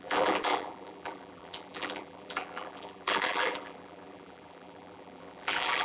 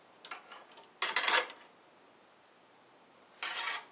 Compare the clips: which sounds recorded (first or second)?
second